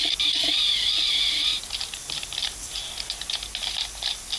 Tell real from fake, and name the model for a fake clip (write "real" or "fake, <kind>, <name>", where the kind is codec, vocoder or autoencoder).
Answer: real